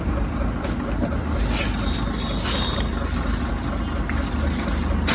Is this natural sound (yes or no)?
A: yes